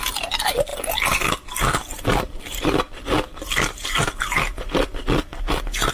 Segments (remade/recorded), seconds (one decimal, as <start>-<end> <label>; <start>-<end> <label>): 0.0-5.9 recorded